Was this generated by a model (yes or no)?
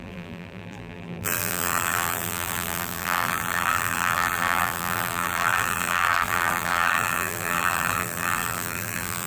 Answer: yes